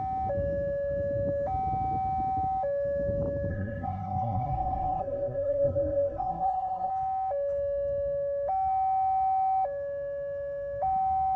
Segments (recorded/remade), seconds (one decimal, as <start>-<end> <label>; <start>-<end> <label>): 0.0-3.5 recorded; 3.5-6.9 remade; 6.9-11.4 recorded